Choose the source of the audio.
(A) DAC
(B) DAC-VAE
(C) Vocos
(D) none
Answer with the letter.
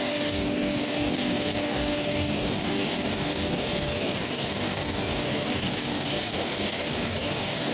A